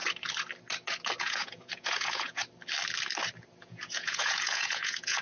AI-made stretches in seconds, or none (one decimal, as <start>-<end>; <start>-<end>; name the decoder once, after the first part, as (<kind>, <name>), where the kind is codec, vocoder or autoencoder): 1.2-2.4 (vocoder, Vocos); 3.6-5.2